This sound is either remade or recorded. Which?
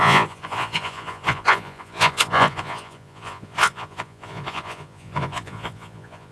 remade